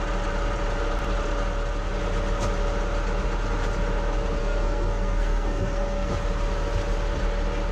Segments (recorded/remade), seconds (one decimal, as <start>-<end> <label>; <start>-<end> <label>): 0.0-4.4 recorded; 4.4-6.1 remade; 6.1-7.7 recorded